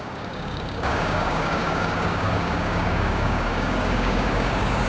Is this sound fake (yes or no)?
yes